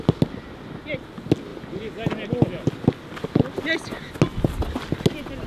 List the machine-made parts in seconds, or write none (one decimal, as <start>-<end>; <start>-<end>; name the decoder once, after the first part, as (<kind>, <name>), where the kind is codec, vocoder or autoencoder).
none